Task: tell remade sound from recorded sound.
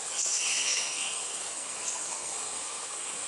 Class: remade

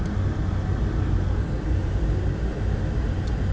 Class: recorded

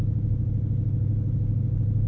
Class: recorded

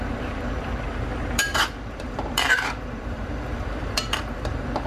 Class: remade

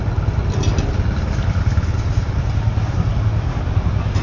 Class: recorded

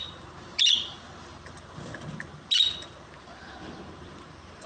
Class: recorded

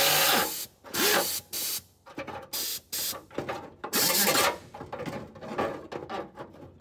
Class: recorded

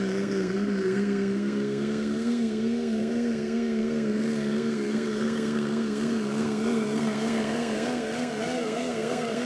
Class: remade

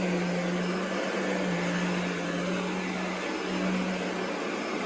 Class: recorded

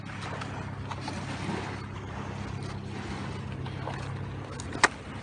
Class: recorded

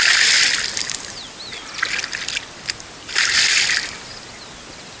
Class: recorded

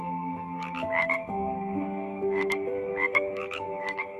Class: remade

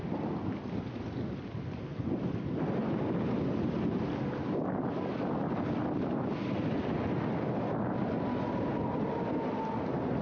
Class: recorded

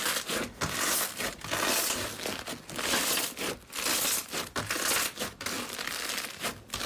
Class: recorded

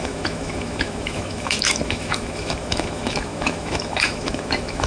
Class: remade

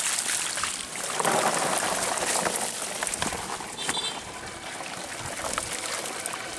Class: recorded